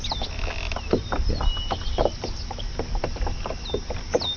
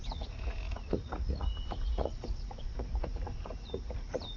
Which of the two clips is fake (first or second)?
second